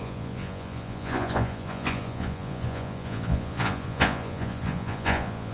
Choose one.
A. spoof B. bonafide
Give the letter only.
A